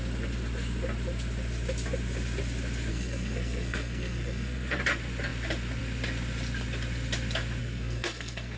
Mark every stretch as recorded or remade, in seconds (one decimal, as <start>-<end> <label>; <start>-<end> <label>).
0.0-2.9 recorded; 2.9-4.8 remade; 4.8-7.6 recorded; 7.6-8.6 remade